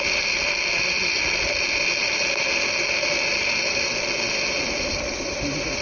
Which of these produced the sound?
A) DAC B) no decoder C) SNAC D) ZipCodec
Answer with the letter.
B